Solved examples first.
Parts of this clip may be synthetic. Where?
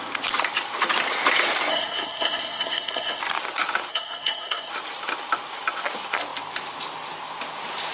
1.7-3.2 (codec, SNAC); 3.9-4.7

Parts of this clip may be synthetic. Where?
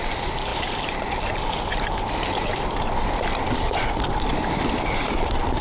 none